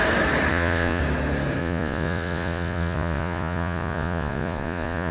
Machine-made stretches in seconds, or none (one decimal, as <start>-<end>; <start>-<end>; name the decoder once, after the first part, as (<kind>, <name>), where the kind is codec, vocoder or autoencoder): 0.5-1.0 (vocoder, Vocos); 1.6-5.1

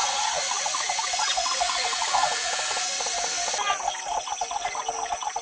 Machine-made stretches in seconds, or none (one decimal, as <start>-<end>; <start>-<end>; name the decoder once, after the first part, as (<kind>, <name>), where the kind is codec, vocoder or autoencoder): 0.0-2.5 (vocoder, Vocos)

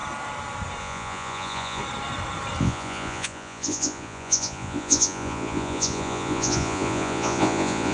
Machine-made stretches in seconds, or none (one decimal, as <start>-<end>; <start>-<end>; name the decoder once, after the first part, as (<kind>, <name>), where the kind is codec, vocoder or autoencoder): 0.8-1.8 (vocoder, Vocos); 2.6-7.9

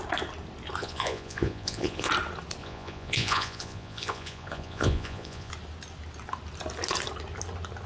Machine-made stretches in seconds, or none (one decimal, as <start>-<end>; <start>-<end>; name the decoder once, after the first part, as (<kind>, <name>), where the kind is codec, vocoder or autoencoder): 0.8-2.1 (vocoder, Vocos); 2.6-5.5

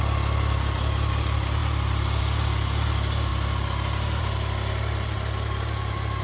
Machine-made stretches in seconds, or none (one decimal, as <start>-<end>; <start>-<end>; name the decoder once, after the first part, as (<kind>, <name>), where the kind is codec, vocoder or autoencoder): none

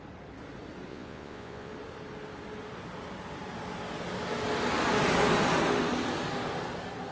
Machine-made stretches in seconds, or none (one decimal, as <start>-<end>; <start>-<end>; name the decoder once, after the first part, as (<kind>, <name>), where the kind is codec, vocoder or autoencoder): 0.9-1.7 (vocoder, Vocos)

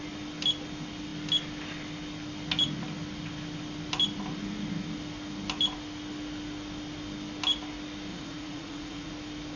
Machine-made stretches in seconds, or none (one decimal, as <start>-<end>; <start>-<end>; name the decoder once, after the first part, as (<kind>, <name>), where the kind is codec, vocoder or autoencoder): 8.1-9.1 (vocoder, Vocos)